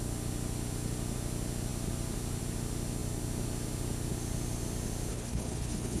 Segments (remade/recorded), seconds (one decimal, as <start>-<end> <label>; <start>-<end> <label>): 0.0-5.1 recorded; 5.1-6.0 remade